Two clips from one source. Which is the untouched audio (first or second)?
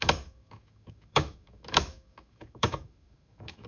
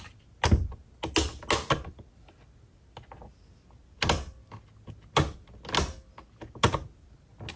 second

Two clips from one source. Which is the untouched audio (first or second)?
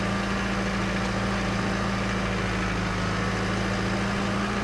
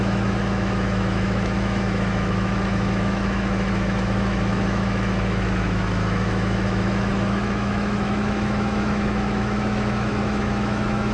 first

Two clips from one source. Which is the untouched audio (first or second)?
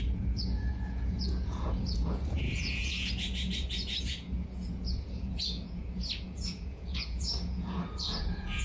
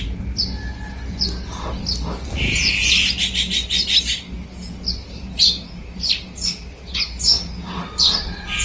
second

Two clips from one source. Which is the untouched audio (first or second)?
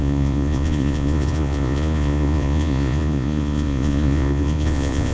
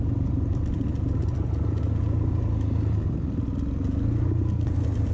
second